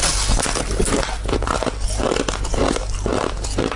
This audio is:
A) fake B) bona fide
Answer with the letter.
B